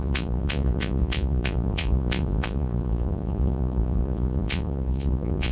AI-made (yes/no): yes